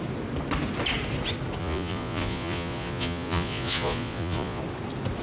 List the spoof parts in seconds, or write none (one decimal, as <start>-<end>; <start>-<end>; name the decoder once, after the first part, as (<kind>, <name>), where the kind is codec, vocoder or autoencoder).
1.6-4.6 (vocoder, Vocos)